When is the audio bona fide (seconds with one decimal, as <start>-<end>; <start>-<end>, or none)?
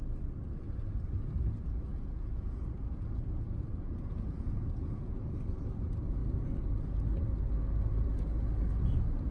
0.0-1.9; 5.2-9.3